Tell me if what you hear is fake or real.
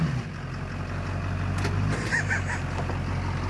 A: real